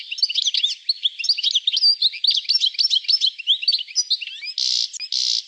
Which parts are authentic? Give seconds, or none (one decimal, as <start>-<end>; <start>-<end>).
0.0-5.5